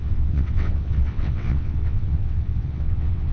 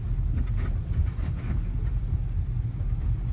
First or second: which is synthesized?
first